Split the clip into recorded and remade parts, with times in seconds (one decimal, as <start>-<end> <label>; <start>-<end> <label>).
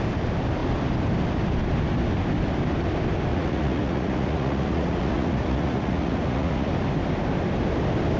0.0-3.3 recorded; 3.3-6.7 remade; 6.7-8.2 recorded